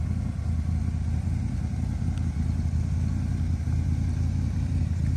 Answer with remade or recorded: recorded